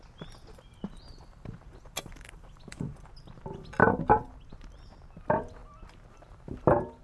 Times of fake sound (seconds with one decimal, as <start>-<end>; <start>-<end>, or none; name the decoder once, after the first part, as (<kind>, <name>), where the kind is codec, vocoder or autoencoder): 0.7-3.1 (vocoder, BigVGAN v2); 3.8-4.5